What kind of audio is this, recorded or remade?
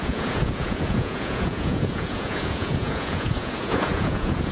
remade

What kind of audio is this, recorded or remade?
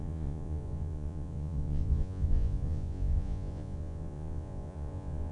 remade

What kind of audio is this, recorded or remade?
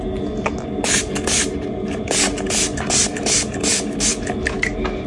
recorded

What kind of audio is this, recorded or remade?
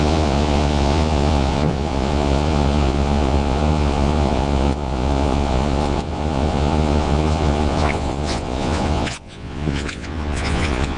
remade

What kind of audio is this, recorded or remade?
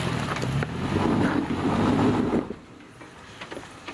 recorded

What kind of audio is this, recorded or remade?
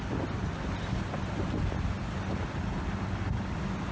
recorded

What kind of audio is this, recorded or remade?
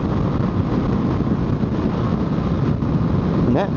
recorded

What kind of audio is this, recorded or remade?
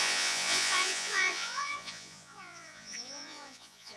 remade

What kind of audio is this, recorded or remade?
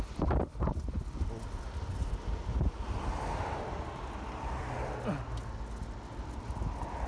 recorded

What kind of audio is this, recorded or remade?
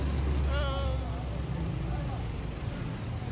recorded